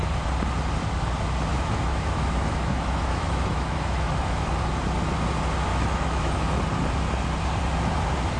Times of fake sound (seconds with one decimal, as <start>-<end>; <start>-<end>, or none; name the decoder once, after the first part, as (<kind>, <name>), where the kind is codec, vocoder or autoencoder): 1.5-4.5 (autoencoder, DAC-VAE); 5.7-6.6